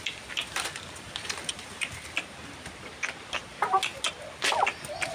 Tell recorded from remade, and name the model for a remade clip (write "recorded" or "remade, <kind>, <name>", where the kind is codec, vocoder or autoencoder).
recorded